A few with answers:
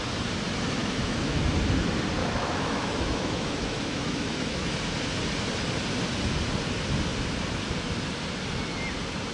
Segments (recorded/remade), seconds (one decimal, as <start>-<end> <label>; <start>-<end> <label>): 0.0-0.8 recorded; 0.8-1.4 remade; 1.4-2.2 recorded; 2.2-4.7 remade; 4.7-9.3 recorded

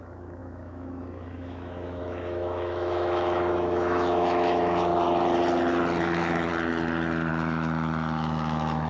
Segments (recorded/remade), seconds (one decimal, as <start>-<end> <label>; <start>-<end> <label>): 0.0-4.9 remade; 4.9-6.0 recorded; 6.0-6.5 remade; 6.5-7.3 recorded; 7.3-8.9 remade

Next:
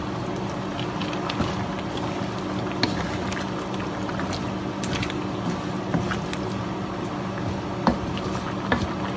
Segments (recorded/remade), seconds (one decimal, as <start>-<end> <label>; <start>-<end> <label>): 0.0-9.2 recorded

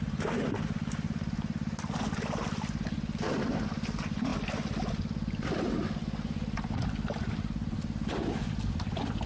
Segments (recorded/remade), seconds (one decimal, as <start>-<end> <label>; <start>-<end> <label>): 0.0-9.3 recorded

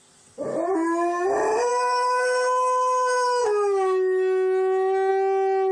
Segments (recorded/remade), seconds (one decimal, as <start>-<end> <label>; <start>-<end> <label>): 0.0-1.7 recorded; 1.7-5.1 remade; 5.1-5.7 recorded

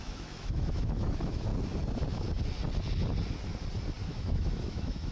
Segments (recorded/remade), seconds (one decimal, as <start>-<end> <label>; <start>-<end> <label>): 0.0-1.5 remade; 1.5-4.0 recorded; 4.0-5.1 remade

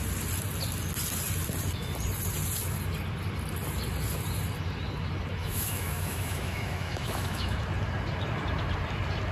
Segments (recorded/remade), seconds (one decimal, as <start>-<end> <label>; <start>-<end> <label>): 0.0-5.4 recorded; 5.4-7.6 remade; 7.6-9.3 recorded

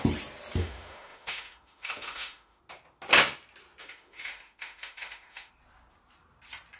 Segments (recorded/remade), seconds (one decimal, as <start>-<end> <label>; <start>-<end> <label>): 0.0-0.6 recorded; 0.6-2.6 remade; 2.6-3.8 recorded; 3.8-5.5 remade; 5.5-6.8 recorded